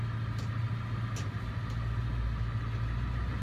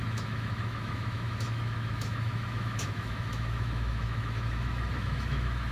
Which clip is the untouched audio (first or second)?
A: first